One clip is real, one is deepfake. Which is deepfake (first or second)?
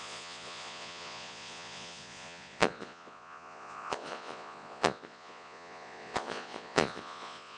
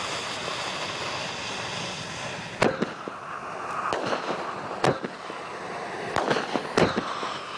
first